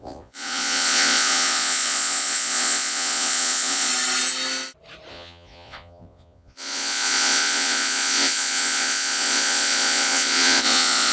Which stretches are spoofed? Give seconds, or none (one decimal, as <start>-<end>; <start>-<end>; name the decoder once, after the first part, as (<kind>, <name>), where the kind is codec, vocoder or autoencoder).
0.0-3.9 (vocoder, Vocos); 5.1-11.1